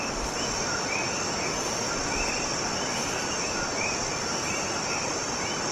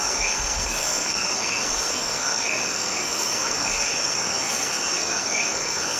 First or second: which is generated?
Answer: second